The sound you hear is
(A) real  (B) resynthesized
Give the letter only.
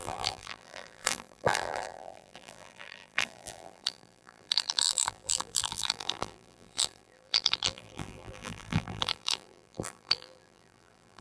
B